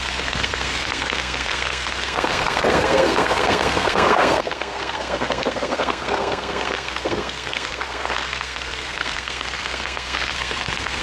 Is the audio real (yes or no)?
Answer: no